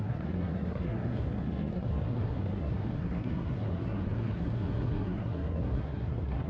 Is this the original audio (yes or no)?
no